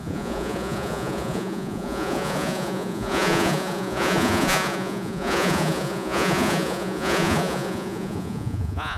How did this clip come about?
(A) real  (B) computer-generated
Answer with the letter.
B